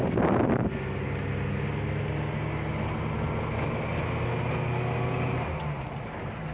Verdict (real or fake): real